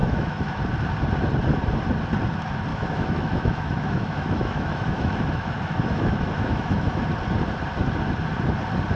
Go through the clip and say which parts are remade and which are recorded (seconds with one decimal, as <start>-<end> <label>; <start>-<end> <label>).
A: 0.0-0.6 remade; 0.6-2.7 recorded; 2.7-7.0 remade; 7.0-9.0 recorded